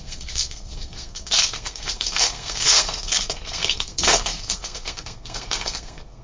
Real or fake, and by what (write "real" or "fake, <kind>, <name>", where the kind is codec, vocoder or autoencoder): fake, codec, SNAC